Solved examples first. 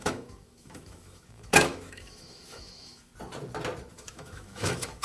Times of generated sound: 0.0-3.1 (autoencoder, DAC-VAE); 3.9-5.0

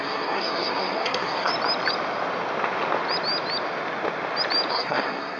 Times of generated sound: 0.0-1.5 (codec, SNAC); 4.7-5.4

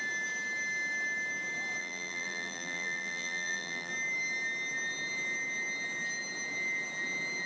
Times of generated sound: 1.8-3.9 (vocoder, BigVGAN v2)

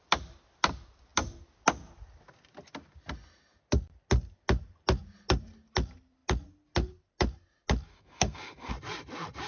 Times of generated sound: 7.9-8.7 (codec, SNAC)

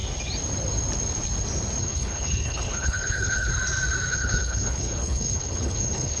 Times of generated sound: 1.8-3.5 (codec, HILCodec); 4.1-6.2

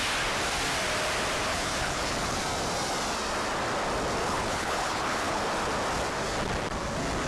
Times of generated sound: 1.5-2.4 (codec, HILCodec); 4.2-5.4